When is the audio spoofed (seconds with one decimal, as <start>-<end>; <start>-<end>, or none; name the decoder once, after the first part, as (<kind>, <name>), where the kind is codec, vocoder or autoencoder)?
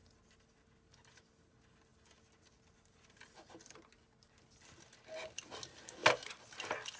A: none